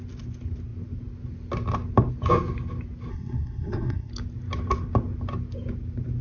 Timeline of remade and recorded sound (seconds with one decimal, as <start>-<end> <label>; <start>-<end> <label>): 0.0-3.1 recorded; 3.1-4.1 remade; 4.1-6.2 recorded